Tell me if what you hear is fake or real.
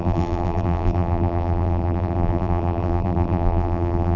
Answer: fake